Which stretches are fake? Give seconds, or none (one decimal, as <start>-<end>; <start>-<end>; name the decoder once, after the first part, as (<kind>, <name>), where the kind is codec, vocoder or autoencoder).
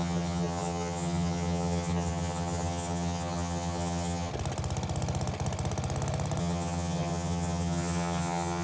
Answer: 0.0-4.3 (vocoder, HiFi-GAN); 6.4-8.6